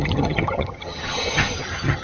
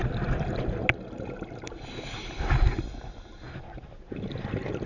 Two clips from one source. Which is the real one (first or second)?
second